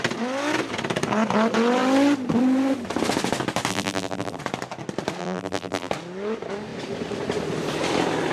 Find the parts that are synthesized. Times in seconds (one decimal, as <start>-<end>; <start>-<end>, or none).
3.7-4.4; 5.2-5.9